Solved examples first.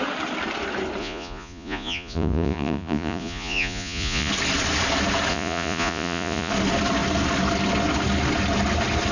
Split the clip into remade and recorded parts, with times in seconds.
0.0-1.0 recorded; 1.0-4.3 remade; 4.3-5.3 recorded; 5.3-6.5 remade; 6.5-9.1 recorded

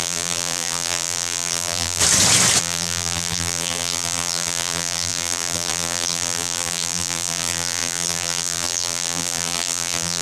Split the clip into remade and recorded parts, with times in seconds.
0.0-2.0 remade; 2.0-2.6 recorded; 2.6-10.2 remade

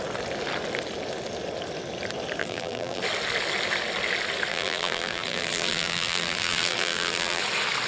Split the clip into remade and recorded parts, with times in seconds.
0.0-2.4 recorded; 2.4-3.0 remade; 3.0-4.5 recorded; 4.5-7.4 remade; 7.4-7.9 recorded

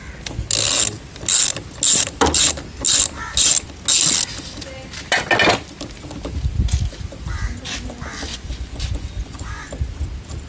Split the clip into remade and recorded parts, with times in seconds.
0.0-8.3 recorded; 8.3-9.7 remade; 9.7-10.5 recorded

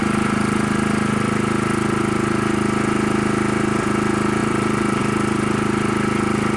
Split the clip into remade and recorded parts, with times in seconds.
0.0-4.4 recorded; 4.4-5.0 remade; 5.0-6.6 recorded